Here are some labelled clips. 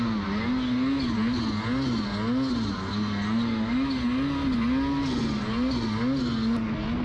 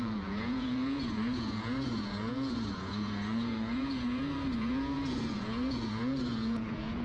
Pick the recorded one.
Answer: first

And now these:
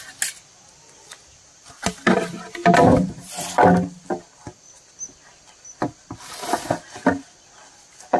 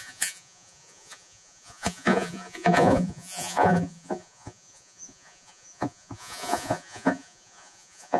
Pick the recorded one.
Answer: first